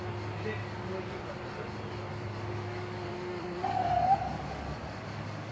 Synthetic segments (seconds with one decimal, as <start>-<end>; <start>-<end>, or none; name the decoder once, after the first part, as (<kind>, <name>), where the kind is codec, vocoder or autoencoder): 0.6-1.3 (codec, DAC); 2.1-5.5